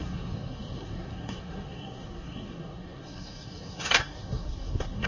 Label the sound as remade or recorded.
remade